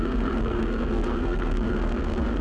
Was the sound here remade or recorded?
remade